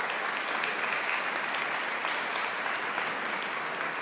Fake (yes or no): no